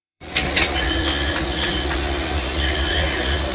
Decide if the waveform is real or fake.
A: fake